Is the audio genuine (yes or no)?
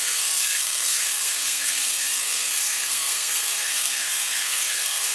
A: no